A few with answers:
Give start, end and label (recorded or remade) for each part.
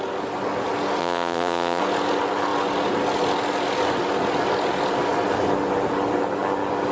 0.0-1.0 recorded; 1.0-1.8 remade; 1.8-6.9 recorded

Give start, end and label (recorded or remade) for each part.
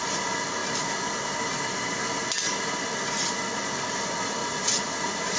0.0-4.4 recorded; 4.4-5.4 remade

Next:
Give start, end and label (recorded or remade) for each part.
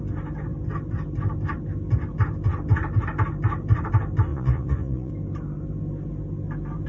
0.0-4.3 recorded; 4.3-5.1 remade; 5.1-6.9 recorded